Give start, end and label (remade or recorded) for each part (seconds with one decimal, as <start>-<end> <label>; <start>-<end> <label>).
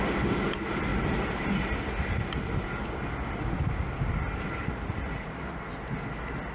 0.0-6.5 recorded